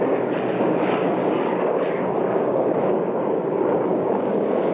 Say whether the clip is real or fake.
fake